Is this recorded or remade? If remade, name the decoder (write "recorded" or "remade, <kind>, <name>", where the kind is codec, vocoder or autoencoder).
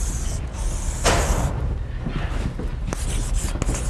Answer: recorded